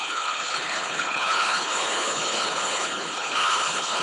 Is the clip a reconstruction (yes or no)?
yes